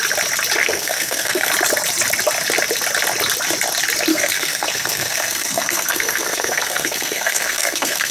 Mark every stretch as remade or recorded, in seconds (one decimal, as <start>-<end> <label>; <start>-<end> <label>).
0.0-0.6 recorded; 0.6-1.5 remade; 1.5-4.1 recorded; 4.1-8.1 remade